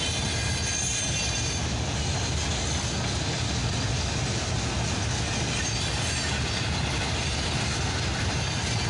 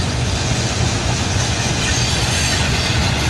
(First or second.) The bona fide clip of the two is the first